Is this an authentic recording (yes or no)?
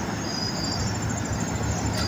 yes